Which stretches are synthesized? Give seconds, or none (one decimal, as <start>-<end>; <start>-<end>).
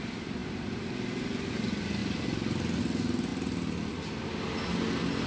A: none